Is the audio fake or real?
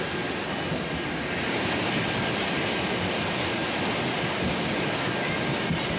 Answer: real